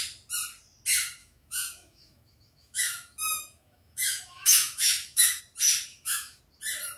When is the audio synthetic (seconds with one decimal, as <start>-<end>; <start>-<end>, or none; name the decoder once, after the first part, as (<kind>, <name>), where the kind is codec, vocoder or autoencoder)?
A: 1.2-5.4 (autoencoder, DAC-VAE); 5.9-6.4